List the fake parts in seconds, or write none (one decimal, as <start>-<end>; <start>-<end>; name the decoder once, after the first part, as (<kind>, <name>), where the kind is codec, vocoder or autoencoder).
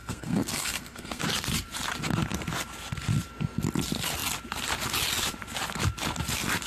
0.0-1.2 (codec, SNAC)